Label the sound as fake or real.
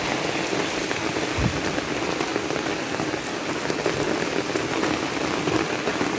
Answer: real